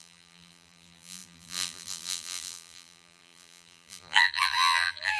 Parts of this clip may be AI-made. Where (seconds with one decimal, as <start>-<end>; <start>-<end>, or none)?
0.0-5.2